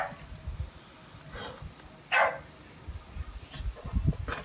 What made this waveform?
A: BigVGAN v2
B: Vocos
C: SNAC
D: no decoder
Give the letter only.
D